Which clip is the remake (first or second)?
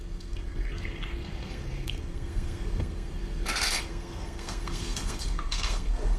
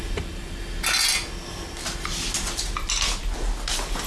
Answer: first